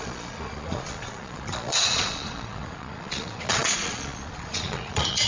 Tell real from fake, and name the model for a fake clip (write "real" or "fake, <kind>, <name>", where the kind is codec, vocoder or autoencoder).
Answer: fake, vocoder, Vocos